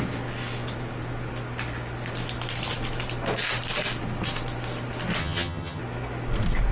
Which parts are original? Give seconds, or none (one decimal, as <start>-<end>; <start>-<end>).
0.0-5.2; 5.8-6.7